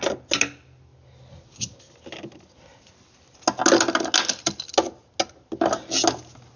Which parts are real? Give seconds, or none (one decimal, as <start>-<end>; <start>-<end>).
0.0-6.6